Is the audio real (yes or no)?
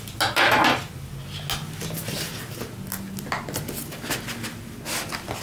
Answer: yes